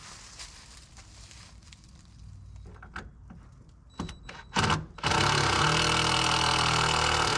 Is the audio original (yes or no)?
yes